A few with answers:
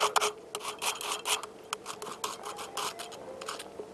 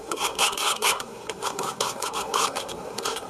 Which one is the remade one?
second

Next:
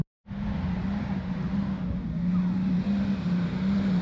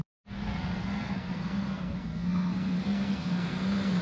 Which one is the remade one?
second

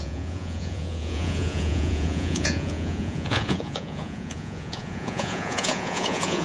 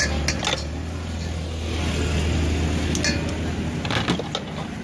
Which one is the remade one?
first